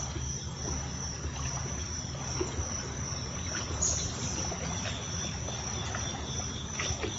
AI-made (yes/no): no